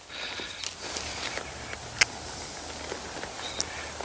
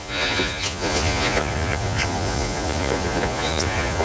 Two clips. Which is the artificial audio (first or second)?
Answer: second